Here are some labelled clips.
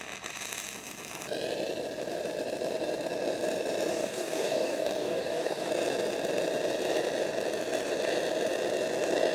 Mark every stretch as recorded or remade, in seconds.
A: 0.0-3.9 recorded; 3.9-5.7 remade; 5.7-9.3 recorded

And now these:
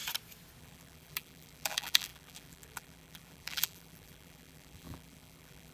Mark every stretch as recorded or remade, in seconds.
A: 0.0-0.6 recorded; 0.6-5.7 remade